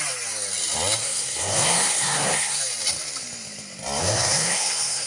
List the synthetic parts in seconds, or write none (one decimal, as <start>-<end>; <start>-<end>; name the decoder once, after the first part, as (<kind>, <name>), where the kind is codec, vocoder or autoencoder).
1.0-2.6 (codec, SNAC); 4.0-5.1